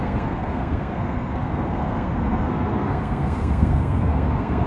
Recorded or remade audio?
remade